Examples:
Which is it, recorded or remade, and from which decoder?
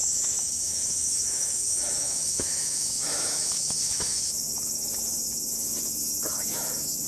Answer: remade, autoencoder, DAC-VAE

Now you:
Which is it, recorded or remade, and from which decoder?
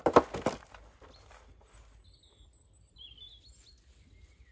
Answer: recorded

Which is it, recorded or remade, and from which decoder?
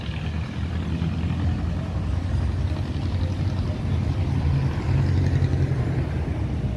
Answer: recorded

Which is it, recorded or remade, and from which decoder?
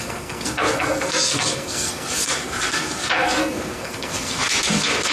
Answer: remade, codec, SNAC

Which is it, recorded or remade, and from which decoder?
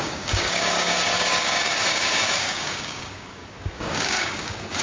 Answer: remade, codec, DAC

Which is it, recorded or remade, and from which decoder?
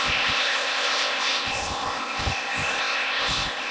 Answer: remade, codec, ZipCodec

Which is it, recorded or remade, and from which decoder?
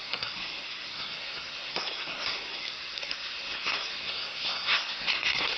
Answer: remade, codec, SNAC